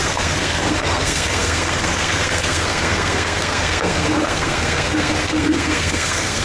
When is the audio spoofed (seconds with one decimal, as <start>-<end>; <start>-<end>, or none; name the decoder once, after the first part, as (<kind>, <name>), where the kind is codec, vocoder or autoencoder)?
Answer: 0.0-6.4 (codec, SNAC)